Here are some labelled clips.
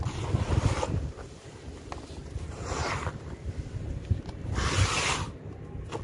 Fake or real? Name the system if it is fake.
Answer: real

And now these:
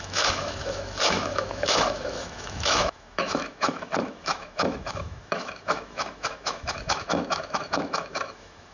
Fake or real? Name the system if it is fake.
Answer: fake, autoencoder, DAC-VAE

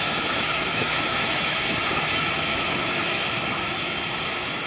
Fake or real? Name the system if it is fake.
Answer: fake, autoencoder, DAC-VAE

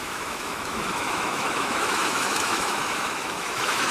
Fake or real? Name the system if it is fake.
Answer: fake, autoencoder, DAC-VAE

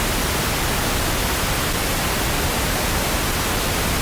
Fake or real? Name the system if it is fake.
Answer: real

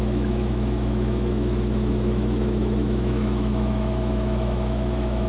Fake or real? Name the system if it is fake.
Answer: fake, autoencoder, DAC-VAE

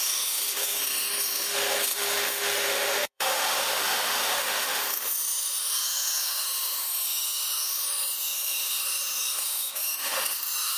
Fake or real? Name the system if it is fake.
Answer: fake, autoencoder, DAC-VAE